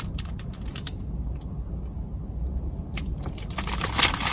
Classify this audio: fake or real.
real